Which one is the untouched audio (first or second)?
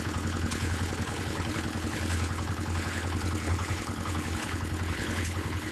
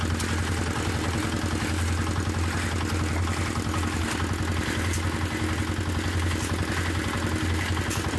second